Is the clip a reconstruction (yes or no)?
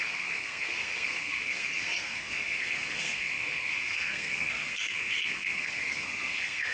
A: yes